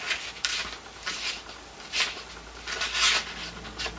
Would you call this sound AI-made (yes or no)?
no